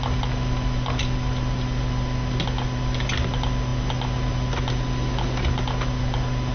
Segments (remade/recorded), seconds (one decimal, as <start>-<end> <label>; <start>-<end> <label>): 0.0-6.5 recorded